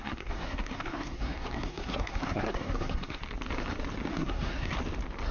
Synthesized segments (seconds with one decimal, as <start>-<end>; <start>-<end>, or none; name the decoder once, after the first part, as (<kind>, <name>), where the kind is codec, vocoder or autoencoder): 0.0-3.2 (codec, SNAC); 4.1-4.8